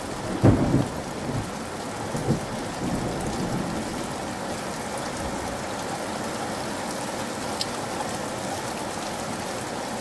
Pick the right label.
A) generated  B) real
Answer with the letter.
B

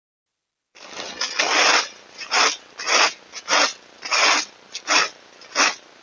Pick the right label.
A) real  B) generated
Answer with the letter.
A